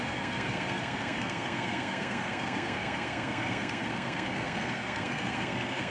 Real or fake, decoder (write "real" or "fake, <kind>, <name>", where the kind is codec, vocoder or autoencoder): fake, codec, SNAC